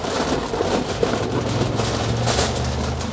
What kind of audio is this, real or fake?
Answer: real